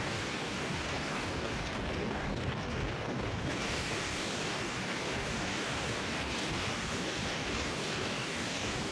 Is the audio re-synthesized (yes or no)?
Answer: yes